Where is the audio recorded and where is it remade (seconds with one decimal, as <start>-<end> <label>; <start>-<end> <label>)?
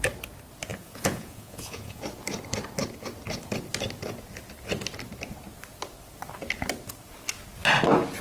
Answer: 0.0-0.7 recorded; 0.7-2.0 remade; 2.0-8.2 recorded